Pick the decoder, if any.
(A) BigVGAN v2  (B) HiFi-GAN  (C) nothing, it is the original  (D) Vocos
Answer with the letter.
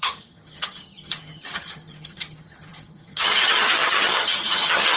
B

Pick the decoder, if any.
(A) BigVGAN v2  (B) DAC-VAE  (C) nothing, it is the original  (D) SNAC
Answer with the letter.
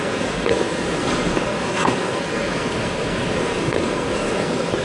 D